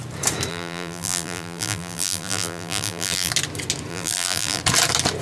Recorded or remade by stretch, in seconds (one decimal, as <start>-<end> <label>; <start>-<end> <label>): 0.0-0.5 recorded; 0.5-3.3 remade; 3.3-3.9 recorded; 3.9-4.6 remade; 4.6-5.2 recorded